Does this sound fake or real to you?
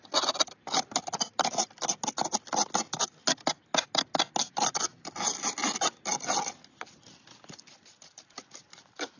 real